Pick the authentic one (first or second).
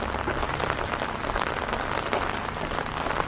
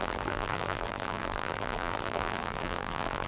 first